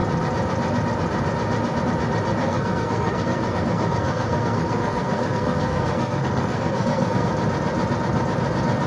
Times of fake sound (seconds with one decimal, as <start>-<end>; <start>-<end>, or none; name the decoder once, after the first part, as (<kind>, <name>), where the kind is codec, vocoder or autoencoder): 2.4-7.3 (codec, SNAC)